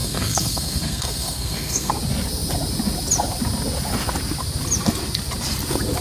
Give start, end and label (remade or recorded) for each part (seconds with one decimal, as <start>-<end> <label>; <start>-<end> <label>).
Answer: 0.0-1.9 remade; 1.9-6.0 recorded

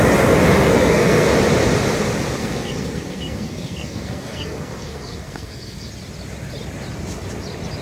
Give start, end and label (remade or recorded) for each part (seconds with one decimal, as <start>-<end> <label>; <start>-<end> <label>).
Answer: 0.0-0.6 recorded; 0.6-1.3 remade; 1.3-2.4 recorded; 2.4-5.9 remade; 5.9-7.8 recorded

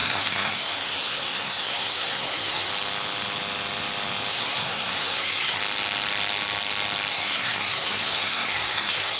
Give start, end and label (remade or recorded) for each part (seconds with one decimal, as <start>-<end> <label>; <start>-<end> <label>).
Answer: 0.0-2.7 remade; 2.7-4.3 recorded; 4.3-5.6 remade; 5.6-7.1 recorded; 7.1-9.2 remade

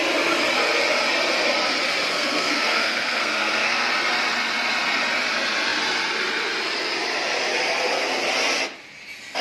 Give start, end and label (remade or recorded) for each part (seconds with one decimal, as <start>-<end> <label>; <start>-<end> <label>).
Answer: 0.0-2.1 recorded; 2.1-3.9 remade; 3.9-9.4 recorded

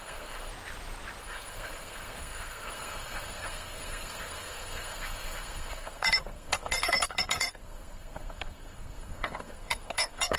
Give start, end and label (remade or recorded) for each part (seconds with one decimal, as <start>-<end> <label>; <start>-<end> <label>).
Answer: 0.0-0.5 remade; 0.5-1.2 recorded; 1.2-10.4 remade